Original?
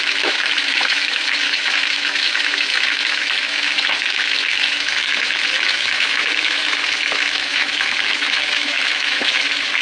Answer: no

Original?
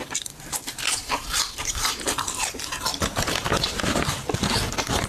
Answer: yes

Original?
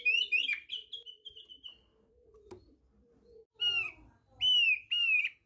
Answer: yes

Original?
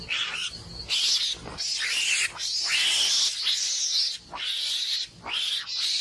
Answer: yes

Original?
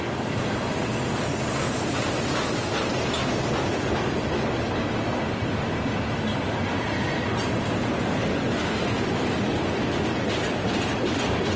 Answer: yes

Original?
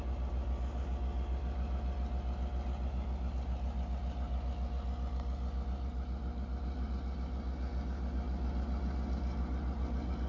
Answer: yes